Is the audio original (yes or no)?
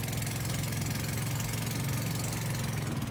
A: yes